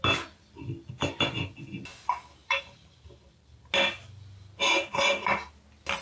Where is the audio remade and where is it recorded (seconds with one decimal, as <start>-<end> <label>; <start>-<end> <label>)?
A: 0.0-2.4 recorded; 2.4-3.3 remade; 3.3-6.0 recorded